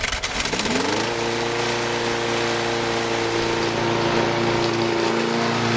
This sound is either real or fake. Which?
real